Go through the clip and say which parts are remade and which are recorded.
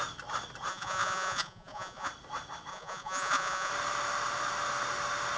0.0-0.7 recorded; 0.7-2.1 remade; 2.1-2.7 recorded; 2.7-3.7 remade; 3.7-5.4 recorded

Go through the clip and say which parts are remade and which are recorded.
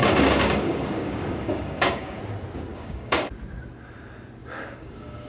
0.0-2.2 remade; 2.2-2.7 recorded; 2.7-3.3 remade; 3.3-4.4 recorded; 4.4-5.3 remade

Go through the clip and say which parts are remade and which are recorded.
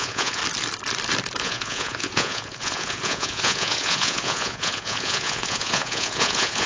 0.0-0.4 remade; 0.4-1.4 recorded; 1.4-6.7 remade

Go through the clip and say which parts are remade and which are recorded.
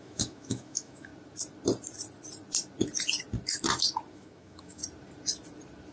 0.0-1.1 remade; 1.1-4.1 recorded; 4.1-4.8 remade; 4.8-5.9 recorded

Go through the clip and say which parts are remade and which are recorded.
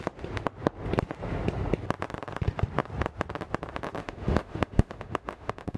0.0-4.0 recorded; 4.0-5.8 remade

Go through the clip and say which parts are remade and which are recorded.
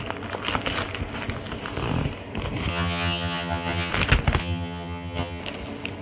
0.0-2.7 recorded; 2.7-3.9 remade; 3.9-4.4 recorded; 4.4-5.4 remade; 5.4-6.0 recorded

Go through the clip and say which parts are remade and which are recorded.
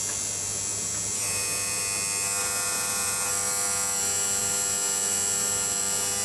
0.0-0.7 recorded; 0.7-1.8 remade; 1.8-2.4 recorded; 2.4-3.3 remade; 3.3-6.2 recorded